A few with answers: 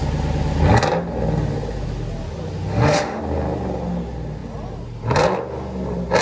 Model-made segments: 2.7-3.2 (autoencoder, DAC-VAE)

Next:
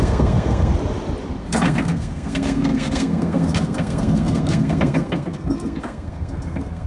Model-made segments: 0.0-0.7 (codec, SNAC); 1.4-6.9

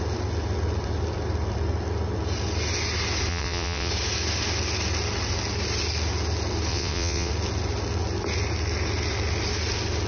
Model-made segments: 3.3-3.9 (vocoder, WaveNeXt); 6.7-7.3

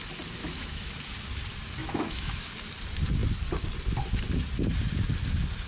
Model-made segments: 0.4-0.9 (autoencoder, DAC-VAE); 1.8-2.5